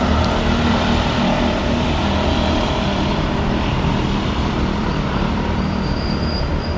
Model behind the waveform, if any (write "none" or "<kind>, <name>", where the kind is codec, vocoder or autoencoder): vocoder, BigVGAN v2